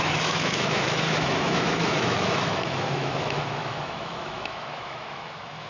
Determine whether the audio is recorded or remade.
remade